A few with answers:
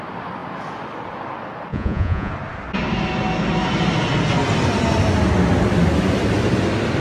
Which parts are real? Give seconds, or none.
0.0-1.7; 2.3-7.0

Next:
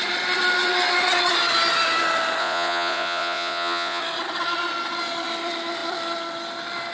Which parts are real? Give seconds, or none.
0.0-2.4; 4.0-6.9

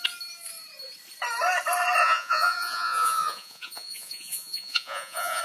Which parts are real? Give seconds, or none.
0.0-2.0

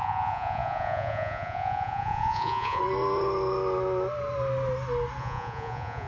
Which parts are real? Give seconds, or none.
2.8-5.2

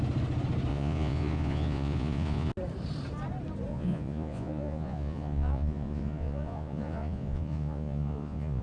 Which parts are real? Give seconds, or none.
0.0-0.7; 2.5-3.7

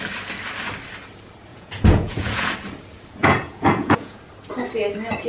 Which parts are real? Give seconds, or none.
0.0-1.5; 2.5-3.2; 4.2-5.3